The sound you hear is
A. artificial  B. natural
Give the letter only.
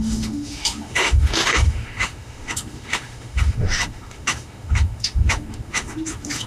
A